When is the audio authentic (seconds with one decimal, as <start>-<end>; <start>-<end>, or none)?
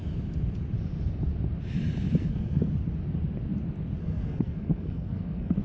0.0-2.2; 2.7-4.0